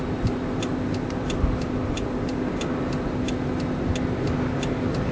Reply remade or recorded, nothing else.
recorded